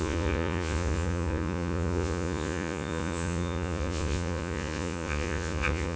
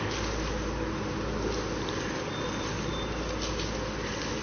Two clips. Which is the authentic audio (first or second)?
second